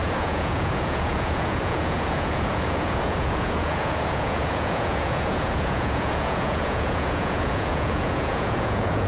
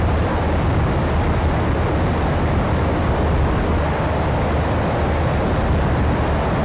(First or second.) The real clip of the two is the second